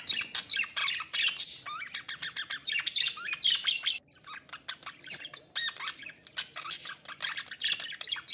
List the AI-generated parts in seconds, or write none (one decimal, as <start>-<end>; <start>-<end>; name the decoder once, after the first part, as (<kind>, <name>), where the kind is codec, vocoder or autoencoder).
0.0-0.8 (vocoder, BigVGAN v2); 5.2-6.0